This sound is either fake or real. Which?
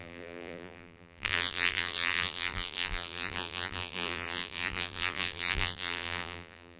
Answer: fake